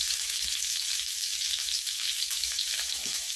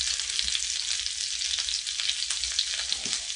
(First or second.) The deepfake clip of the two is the first